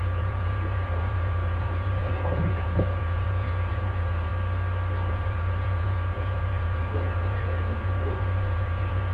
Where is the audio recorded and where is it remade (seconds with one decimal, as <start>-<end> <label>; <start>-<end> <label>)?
0.0-4.3 remade; 4.3-5.1 recorded; 5.1-9.1 remade